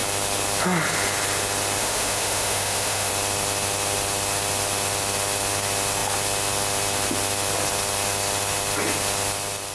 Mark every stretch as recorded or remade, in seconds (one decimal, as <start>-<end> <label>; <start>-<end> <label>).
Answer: 0.0-1.8 recorded; 1.8-3.1 remade; 3.1-9.7 recorded